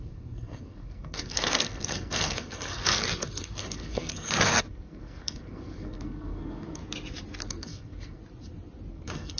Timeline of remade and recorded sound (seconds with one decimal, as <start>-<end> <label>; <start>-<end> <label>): 0.0-6.8 remade; 6.8-7.4 recorded; 7.4-8.2 remade; 8.2-8.9 recorded; 8.9-9.4 remade